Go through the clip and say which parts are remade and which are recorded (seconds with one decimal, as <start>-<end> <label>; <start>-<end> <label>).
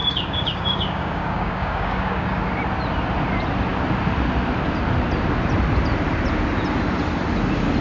0.0-2.4 remade; 2.4-7.8 recorded